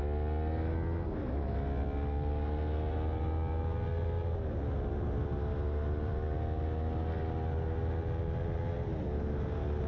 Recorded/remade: recorded